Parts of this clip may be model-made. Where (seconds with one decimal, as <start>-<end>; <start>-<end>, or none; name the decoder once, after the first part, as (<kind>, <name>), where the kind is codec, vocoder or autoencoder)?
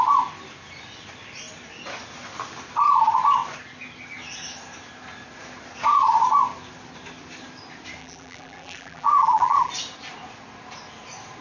8.0-9.7 (vocoder, BigVGAN v2)